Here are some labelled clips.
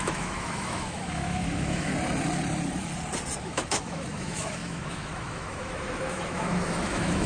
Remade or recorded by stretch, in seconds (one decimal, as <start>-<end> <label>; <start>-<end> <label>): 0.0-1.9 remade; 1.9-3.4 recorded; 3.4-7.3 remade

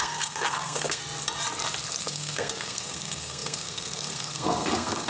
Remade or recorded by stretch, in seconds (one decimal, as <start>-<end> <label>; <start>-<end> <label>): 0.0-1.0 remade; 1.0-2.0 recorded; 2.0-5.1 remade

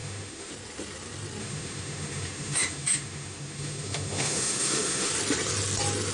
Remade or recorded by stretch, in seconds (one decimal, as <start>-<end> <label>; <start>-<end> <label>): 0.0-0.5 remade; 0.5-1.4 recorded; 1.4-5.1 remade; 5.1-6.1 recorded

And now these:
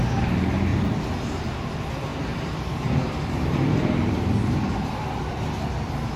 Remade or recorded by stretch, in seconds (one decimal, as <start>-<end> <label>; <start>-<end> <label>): 0.0-0.7 recorded; 0.7-1.4 remade; 1.4-2.1 recorded; 2.1-5.0 remade; 5.0-6.2 recorded

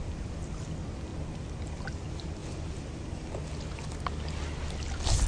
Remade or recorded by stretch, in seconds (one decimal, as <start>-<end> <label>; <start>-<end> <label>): 0.0-5.3 recorded

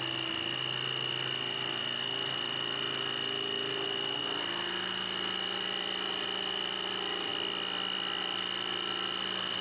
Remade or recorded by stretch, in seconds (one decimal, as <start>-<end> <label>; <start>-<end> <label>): 0.0-9.6 recorded

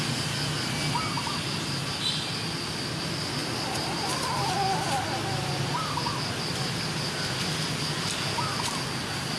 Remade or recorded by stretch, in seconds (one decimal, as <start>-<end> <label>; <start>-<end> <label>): 0.0-9.4 recorded